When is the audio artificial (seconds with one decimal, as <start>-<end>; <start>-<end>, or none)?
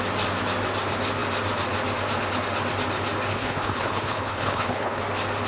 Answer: 3.3-5.0